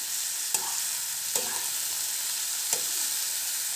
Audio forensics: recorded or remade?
recorded